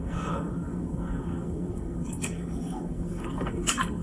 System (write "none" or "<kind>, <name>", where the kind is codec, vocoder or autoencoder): codec, SNAC